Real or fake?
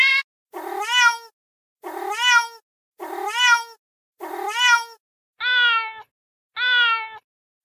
real